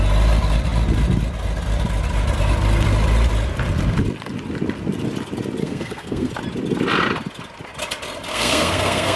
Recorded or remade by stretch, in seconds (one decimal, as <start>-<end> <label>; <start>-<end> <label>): 0.0-5.6 recorded; 5.6-6.3 remade; 6.3-8.3 recorded; 8.3-9.2 remade